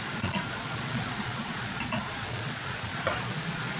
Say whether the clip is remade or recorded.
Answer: remade